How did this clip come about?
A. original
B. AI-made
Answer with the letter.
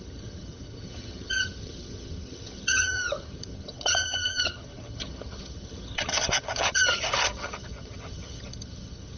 B